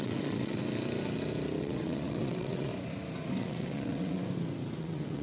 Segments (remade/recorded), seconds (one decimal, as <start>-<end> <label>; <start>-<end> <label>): 0.0-0.6 remade; 0.6-1.6 recorded; 1.6-2.7 remade; 2.7-3.4 recorded; 3.4-4.2 remade; 4.2-4.8 recorded; 4.8-5.2 remade